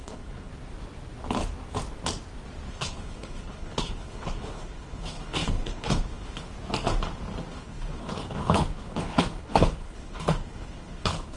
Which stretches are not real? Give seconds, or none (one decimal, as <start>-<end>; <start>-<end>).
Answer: 0.0-0.5; 2.7-6.5; 7.5-11.4